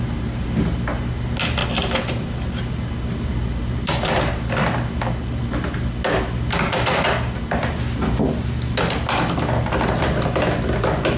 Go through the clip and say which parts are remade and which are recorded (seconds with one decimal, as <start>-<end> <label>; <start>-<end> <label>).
0.0-11.2 recorded